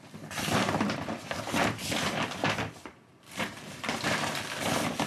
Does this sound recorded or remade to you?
remade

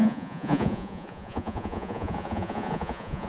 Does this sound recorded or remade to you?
remade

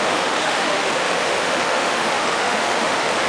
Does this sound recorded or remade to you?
remade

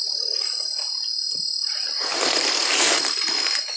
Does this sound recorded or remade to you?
recorded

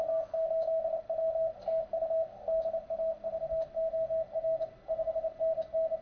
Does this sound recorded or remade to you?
recorded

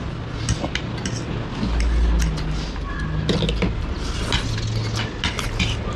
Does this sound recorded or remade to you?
recorded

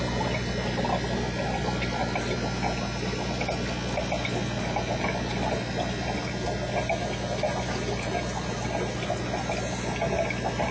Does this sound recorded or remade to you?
recorded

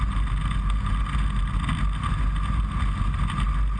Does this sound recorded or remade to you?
recorded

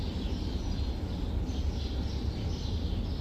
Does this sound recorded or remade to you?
recorded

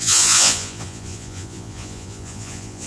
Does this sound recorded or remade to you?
remade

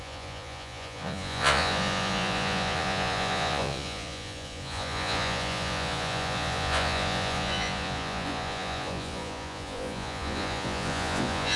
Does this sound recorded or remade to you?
remade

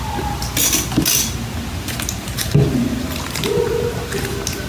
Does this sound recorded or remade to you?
recorded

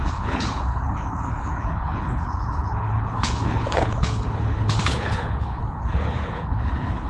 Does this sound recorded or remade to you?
remade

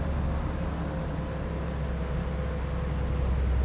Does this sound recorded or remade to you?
recorded